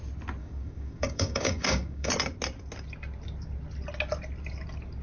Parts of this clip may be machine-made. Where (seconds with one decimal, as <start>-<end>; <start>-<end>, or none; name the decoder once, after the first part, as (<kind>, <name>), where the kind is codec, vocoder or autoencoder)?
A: 0.4-2.1 (codec, DAC)